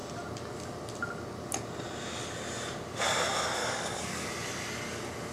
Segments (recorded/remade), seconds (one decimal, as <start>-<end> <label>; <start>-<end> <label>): 0.0-3.6 recorded; 3.6-4.3 remade; 4.3-5.3 recorded